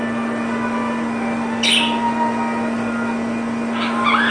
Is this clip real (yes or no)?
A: yes